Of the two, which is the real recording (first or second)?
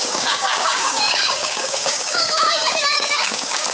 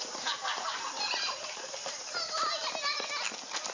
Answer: second